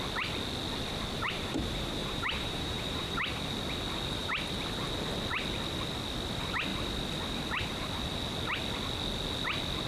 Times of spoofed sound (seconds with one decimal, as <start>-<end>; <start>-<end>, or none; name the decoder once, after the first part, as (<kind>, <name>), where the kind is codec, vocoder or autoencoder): 2.0-3.1 (vocoder, BigVGAN v2)